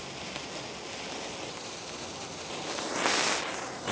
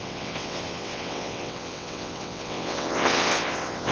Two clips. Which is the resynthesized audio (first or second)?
second